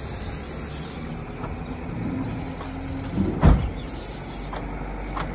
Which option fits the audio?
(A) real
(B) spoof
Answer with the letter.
A